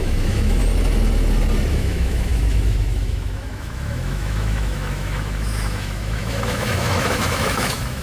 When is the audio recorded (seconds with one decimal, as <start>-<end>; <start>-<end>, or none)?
0.6-1.7